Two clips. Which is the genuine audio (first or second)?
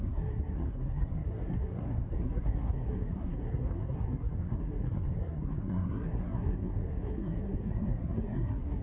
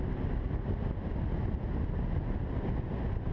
second